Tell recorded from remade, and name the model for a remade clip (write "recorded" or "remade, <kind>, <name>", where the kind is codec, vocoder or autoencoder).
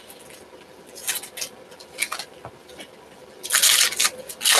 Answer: recorded